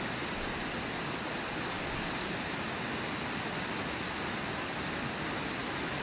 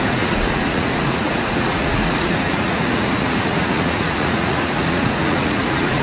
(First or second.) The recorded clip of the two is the first